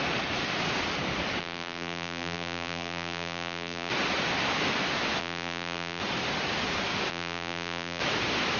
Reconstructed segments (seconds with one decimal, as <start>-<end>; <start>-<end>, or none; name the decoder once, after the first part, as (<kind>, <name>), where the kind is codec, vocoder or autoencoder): 1.4-3.9 (vocoder, BigVGAN v2); 5.2-6.0; 7.1-8.0